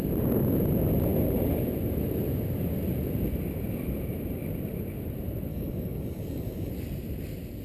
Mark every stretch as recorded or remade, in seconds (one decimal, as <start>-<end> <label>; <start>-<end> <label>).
0.0-5.5 recorded; 5.5-6.7 remade; 6.7-7.6 recorded